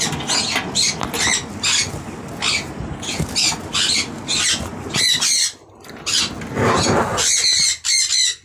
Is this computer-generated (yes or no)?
no